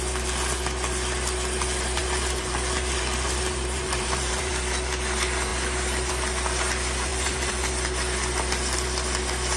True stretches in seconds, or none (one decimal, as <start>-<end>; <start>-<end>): 0.0-2.0; 4.5-7.1; 7.7-9.6